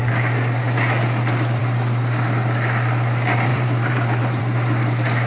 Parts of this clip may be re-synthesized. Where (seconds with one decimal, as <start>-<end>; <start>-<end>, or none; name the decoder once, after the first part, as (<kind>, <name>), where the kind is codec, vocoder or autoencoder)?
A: 3.5-4.4 (vocoder, BigVGAN v2)